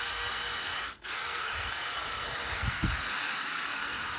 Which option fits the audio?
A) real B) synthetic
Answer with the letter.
B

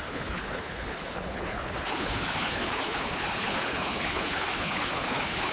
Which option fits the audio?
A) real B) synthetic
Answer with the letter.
B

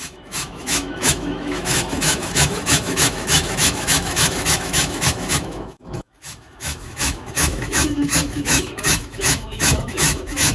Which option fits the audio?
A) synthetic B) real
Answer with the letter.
A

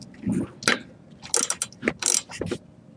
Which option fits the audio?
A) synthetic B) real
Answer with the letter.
B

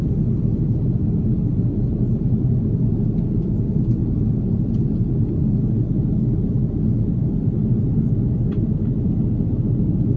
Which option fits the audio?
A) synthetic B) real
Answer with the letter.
B